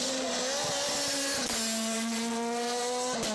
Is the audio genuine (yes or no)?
yes